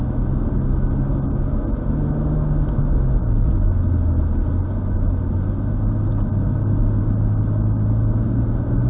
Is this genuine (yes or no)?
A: yes